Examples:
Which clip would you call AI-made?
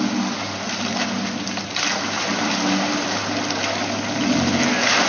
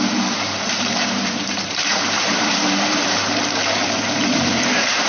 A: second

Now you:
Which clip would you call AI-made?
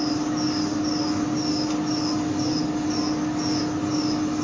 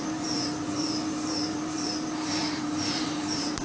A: second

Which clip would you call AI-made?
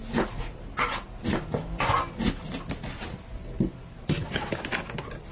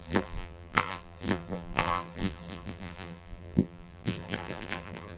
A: second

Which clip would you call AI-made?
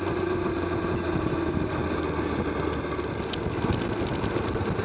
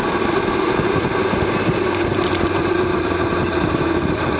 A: second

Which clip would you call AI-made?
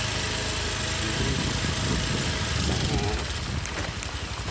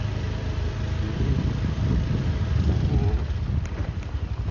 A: second